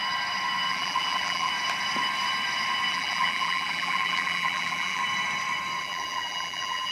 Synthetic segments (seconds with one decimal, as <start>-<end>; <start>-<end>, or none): 0.7-1.5; 2.9-5.0; 5.8-6.9